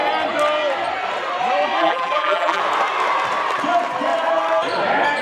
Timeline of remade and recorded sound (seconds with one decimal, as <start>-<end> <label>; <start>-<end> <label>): 0.0-1.8 recorded; 1.8-2.6 remade; 2.6-5.2 recorded